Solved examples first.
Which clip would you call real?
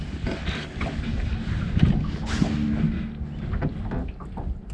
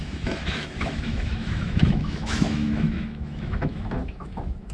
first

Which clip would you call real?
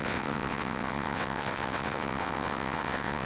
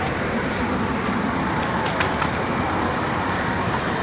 second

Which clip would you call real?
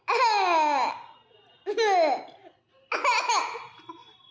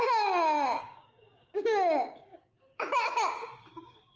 first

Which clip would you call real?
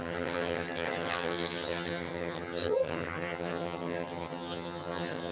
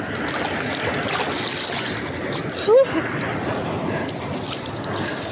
second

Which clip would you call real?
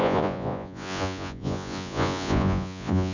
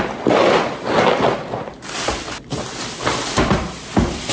second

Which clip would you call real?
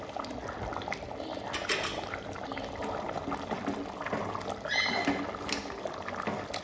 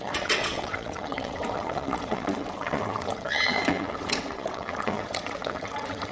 first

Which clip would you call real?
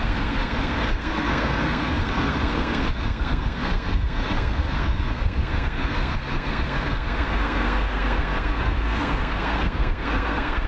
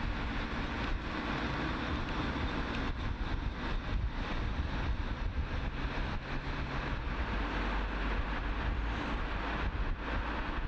second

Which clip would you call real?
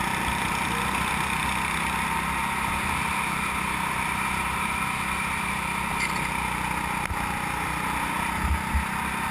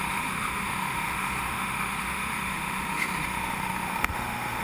first